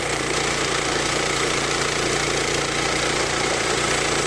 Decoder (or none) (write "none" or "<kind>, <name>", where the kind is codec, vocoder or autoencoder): vocoder, BigVGAN v2